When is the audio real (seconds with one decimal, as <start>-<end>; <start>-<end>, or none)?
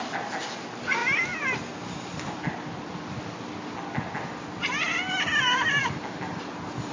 0.0-6.9